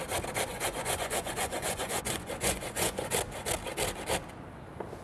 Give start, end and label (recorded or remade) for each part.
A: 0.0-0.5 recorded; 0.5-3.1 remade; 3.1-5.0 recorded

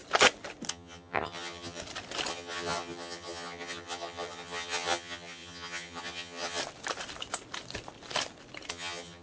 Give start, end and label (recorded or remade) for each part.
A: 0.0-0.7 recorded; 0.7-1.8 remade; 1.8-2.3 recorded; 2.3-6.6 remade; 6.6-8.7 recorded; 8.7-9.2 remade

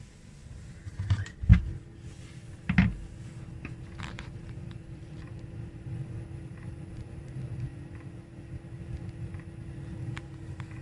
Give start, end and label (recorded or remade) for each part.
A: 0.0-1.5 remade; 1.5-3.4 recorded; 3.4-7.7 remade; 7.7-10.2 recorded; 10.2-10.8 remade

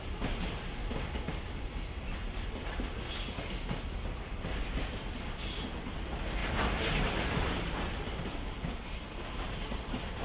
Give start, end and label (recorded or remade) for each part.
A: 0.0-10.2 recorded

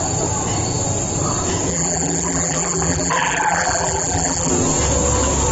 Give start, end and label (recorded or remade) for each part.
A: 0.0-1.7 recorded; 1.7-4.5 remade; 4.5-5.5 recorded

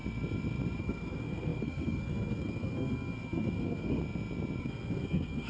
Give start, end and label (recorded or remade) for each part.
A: 0.0-0.8 recorded; 0.8-4.0 remade; 4.0-4.6 recorded; 4.6-5.5 remade

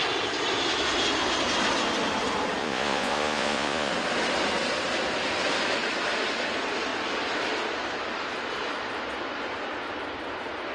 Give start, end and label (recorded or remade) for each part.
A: 0.0-2.6 recorded; 2.6-3.9 remade; 3.9-10.7 recorded

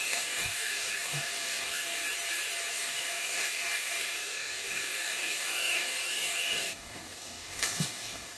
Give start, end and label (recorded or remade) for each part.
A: 0.0-2.0 remade; 2.0-2.7 recorded; 2.7-8.4 remade